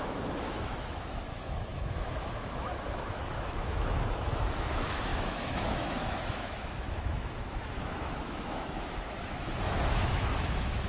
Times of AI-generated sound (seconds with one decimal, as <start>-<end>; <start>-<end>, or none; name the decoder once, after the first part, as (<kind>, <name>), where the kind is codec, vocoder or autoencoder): 0.0-10.9 (autoencoder, DAC-VAE)

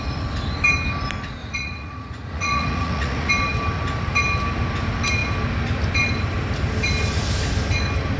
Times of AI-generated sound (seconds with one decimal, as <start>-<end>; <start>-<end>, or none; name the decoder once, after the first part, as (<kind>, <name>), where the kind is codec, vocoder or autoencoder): 1.4-3.3 (vocoder, Vocos)